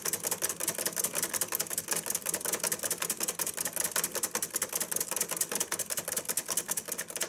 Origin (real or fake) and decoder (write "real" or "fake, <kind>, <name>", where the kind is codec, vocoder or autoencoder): real